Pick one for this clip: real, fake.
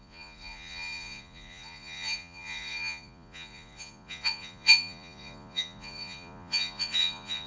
fake